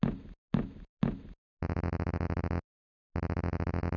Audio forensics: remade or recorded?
recorded